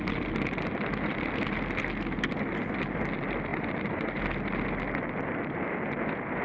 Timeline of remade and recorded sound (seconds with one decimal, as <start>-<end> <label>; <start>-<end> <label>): 0.0-3.5 recorded; 3.5-4.2 remade; 4.2-6.4 recorded